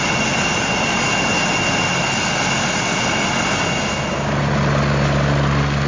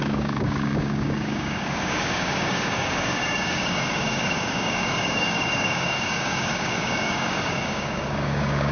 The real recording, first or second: first